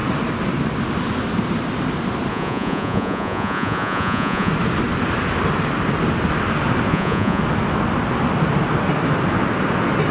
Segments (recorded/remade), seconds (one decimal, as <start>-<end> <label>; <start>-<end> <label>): 0.0-2.3 recorded; 2.3-4.5 remade; 4.5-6.9 recorded; 6.9-7.4 remade; 7.4-10.1 recorded